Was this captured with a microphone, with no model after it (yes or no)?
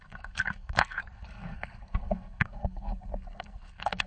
no